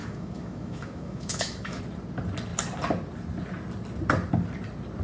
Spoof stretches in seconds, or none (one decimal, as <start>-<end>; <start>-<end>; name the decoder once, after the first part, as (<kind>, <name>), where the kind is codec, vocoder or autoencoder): 0.0-1.8 (autoencoder, DAC-VAE)